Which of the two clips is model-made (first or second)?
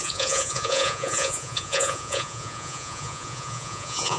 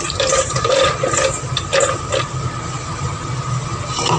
first